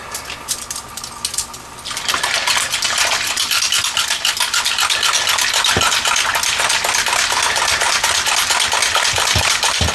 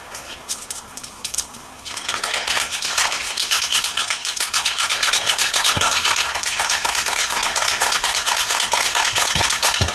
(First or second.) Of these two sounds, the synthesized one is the second